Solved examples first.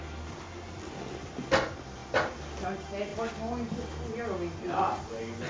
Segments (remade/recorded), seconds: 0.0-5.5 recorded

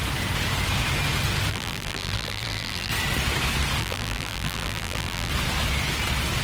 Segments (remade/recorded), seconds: 0.0-1.5 recorded; 1.5-2.9 remade; 2.9-3.8 recorded; 3.8-5.3 remade; 5.3-6.4 recorded

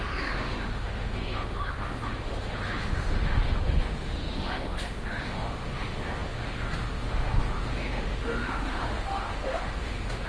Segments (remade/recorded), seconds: 0.0-10.3 remade